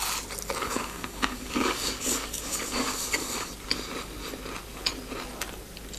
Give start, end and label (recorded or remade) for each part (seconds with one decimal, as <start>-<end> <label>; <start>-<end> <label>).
0.0-0.6 recorded; 0.6-3.5 remade; 3.5-6.0 recorded